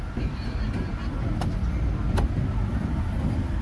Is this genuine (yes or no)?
yes